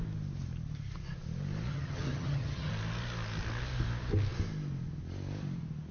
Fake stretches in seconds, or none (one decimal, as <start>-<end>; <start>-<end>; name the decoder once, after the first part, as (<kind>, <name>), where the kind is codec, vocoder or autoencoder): 1.7-2.7 (vocoder, HiFi-GAN)